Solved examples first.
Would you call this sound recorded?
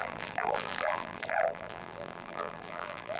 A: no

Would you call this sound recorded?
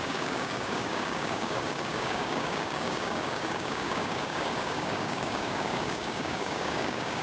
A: no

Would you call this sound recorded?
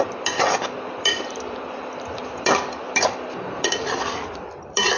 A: no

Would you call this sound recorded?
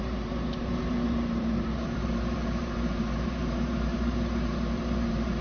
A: no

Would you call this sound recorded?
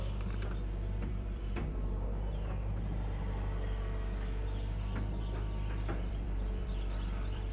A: no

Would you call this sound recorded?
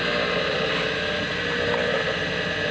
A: yes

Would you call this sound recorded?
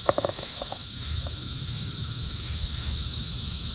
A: no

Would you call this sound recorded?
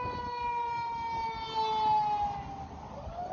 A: yes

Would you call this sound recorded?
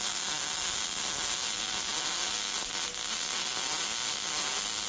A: yes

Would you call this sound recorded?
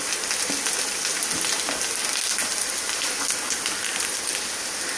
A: yes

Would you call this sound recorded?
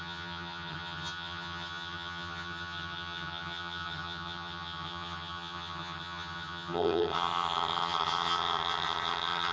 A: no